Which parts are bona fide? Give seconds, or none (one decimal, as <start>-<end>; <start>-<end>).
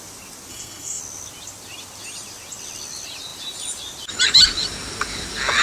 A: 0.0-0.5; 1.0-5.6